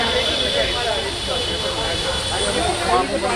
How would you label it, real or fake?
real